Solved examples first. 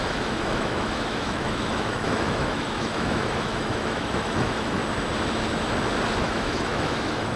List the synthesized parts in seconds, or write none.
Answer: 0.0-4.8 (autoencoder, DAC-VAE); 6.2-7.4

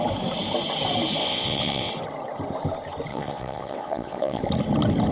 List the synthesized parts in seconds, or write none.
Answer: 1.2-1.9 (vocoder, WaveNeXt); 3.1-4.4

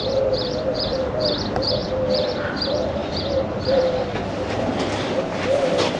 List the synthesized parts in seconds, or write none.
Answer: 0.0-6.0 (vocoder, BigVGAN v2)

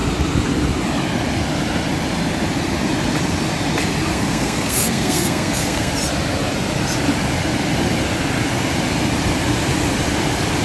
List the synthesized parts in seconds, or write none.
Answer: 4.1-5.9 (codec, SNAC)

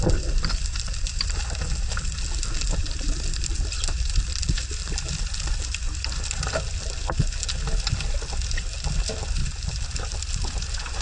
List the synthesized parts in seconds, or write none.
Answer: 2.8-4.6 (vocoder, BigVGAN v2); 9.4-11.0

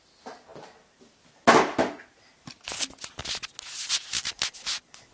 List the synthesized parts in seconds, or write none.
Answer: none

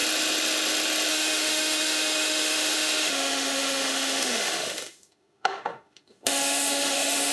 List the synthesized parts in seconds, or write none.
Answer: 1.1-7.3 (autoencoder, DAC-VAE)